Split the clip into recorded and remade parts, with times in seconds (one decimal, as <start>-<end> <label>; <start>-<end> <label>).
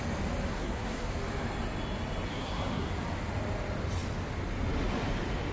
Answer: 0.0-0.5 recorded; 0.5-1.1 remade; 1.1-2.3 recorded; 2.3-2.9 remade; 2.9-5.5 recorded